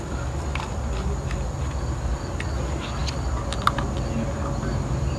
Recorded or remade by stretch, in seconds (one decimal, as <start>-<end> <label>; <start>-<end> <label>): 0.0-5.2 recorded